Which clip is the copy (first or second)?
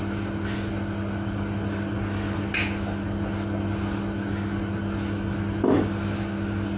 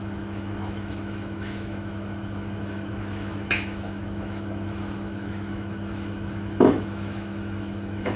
second